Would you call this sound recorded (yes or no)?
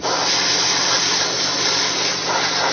yes